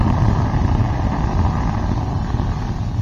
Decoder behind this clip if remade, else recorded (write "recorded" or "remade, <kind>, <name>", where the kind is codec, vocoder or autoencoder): recorded